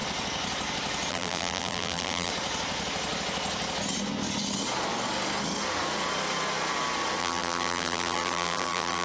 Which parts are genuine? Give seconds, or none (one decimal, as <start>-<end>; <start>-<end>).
0.0-1.1; 2.3-7.2

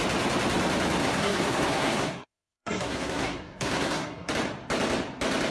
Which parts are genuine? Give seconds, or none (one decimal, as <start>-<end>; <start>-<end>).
0.0-1.0; 4.3-5.5

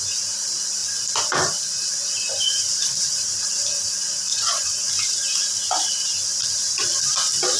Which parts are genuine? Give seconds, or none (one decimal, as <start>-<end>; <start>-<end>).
0.0-4.3; 4.8-7.6

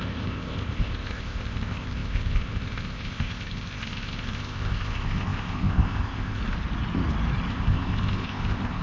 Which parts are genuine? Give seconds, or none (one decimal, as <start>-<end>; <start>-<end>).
6.4-7.5

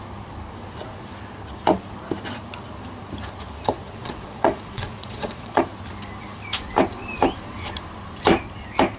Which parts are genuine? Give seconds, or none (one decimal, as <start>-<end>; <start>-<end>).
0.0-3.8; 5.6-9.0

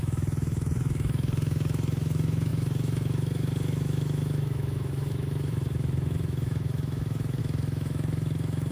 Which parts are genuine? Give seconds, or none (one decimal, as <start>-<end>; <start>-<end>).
none

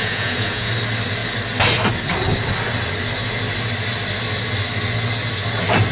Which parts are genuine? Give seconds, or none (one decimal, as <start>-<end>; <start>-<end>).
0.7-5.9